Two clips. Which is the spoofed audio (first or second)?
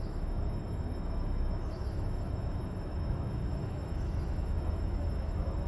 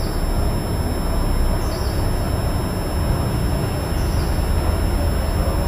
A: first